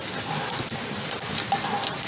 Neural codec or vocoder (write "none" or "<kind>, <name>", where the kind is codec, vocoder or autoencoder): none